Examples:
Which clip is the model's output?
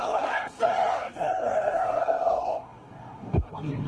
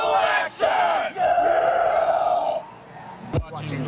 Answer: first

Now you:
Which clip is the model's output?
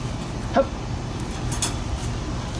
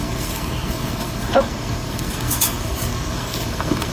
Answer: second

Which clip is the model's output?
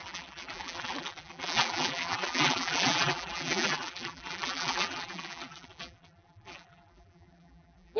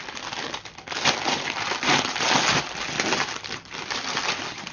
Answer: first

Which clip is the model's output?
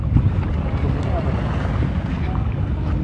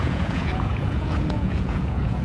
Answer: second